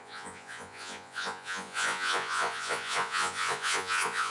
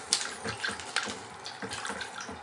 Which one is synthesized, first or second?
first